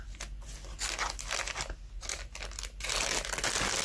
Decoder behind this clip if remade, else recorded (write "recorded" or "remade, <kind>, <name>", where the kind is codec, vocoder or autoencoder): recorded